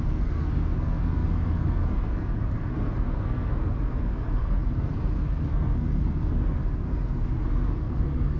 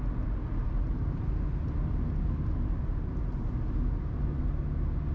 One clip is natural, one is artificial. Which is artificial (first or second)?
first